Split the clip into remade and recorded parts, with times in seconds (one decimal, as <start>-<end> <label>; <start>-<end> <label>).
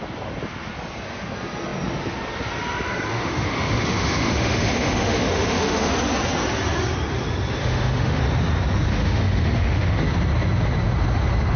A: 0.0-3.1 recorded; 3.1-5.9 remade; 5.9-7.6 recorded; 7.6-8.2 remade; 8.2-8.9 recorded; 8.9-10.0 remade; 10.0-11.6 recorded